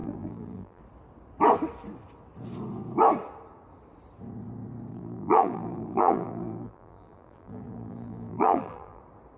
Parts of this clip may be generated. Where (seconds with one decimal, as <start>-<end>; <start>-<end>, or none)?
0.0-0.8; 4.9-9.0